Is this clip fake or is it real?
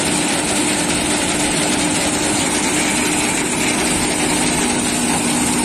real